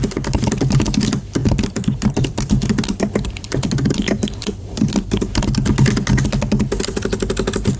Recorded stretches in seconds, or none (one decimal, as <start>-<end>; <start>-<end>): 0.0-1.4; 4.9-7.8